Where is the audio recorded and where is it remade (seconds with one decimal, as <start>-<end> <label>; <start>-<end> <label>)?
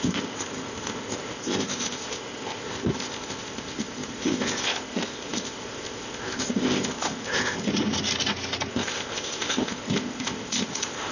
0.0-7.7 remade; 7.7-8.7 recorded; 8.7-11.1 remade